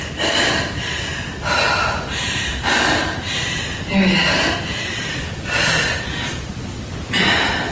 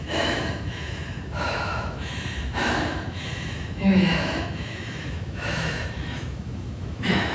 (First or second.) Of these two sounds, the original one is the first